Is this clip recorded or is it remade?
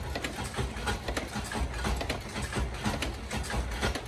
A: recorded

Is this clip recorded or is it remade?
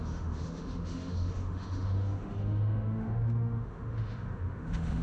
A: remade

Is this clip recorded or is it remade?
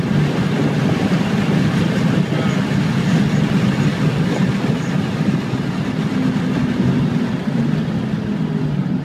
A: recorded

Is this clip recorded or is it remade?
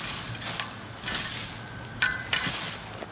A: recorded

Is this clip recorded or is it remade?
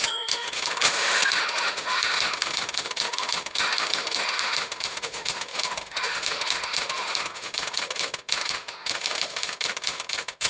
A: remade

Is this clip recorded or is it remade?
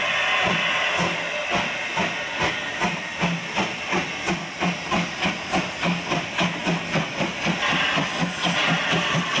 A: recorded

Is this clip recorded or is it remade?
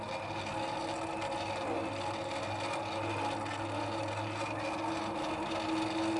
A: recorded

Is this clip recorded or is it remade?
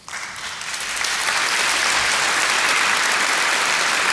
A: recorded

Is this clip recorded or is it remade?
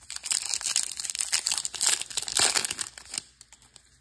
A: recorded